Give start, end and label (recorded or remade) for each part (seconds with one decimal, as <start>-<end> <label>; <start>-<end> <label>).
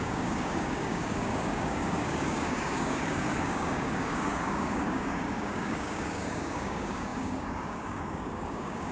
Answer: 0.0-8.9 remade